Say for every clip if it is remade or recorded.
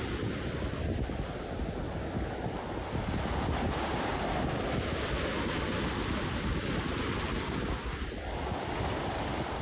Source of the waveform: recorded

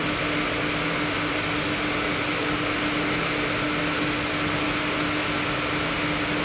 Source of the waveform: recorded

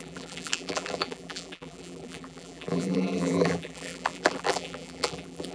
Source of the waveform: remade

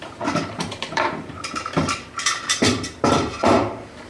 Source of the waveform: remade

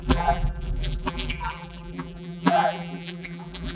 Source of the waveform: remade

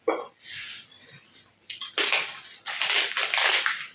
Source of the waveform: recorded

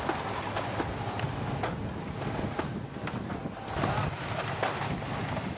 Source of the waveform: recorded